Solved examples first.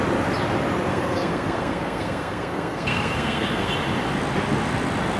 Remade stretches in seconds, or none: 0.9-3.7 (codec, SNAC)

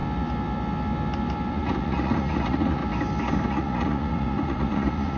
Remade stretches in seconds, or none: 1.5-2.8 (vocoder, Vocos); 3.5-5.2